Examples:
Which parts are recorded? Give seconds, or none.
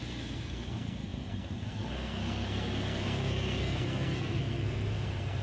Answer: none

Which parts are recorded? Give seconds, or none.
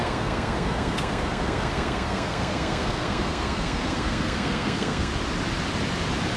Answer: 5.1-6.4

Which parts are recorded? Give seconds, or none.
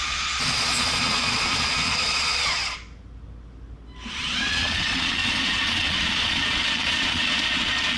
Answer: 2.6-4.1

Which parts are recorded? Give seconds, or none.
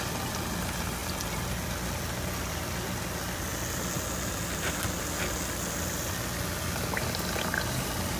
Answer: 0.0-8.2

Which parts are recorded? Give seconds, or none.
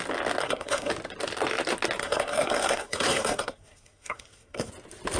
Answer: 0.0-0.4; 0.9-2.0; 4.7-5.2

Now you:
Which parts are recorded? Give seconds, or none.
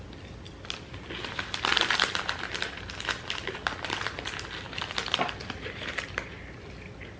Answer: 0.0-7.2